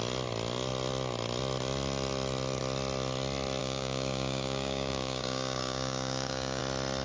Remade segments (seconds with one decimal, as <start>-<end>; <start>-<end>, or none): 3.6-6.6